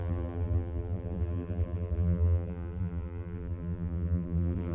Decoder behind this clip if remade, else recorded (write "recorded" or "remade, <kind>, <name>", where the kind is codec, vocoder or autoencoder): remade, vocoder, BigVGAN v2